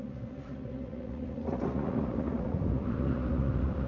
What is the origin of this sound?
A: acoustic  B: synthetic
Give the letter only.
B